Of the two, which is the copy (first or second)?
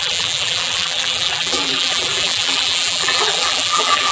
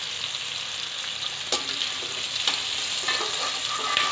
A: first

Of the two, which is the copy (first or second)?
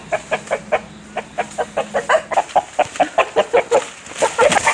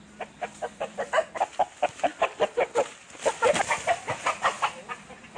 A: second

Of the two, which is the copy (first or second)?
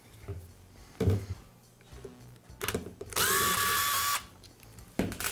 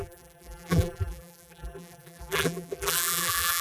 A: second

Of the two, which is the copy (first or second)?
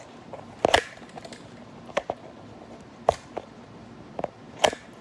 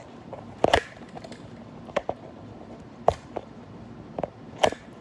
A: second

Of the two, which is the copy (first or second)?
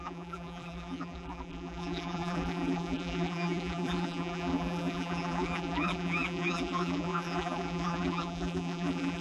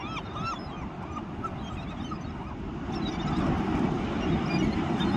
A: first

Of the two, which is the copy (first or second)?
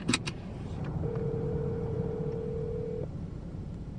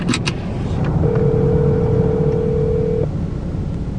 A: first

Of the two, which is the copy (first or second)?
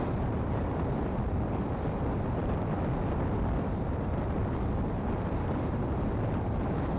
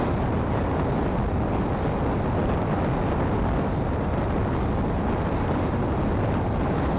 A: first